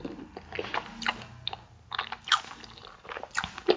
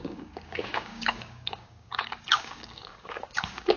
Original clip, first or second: first